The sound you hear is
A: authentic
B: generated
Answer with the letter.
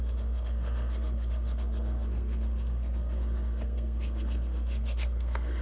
B